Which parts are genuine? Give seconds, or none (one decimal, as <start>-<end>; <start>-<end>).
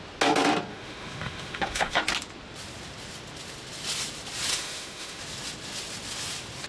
0.0-0.7; 2.0-4.5; 5.2-6.7